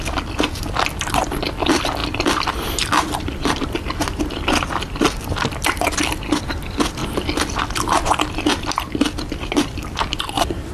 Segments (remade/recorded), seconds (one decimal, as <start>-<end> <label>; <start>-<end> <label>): 0.0-10.7 recorded

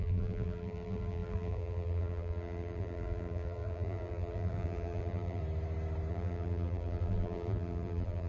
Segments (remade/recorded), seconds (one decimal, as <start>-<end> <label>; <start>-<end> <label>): 0.0-5.4 remade; 5.4-6.1 recorded; 6.1-8.3 remade